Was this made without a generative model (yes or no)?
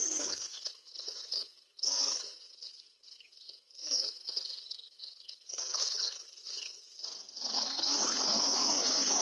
no